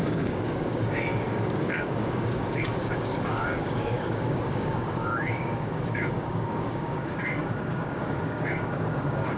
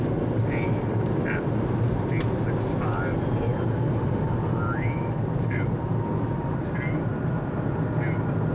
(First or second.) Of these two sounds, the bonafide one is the second